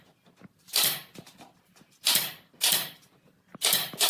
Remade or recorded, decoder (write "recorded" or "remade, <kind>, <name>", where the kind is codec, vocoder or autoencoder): recorded